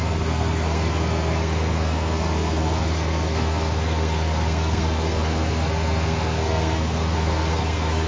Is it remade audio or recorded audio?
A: remade